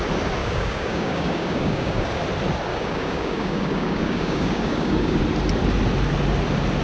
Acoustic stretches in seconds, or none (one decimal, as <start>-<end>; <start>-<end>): 0.0-0.4; 2.2-2.7; 5.2-6.8